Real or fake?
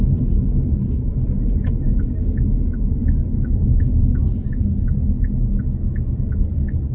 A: real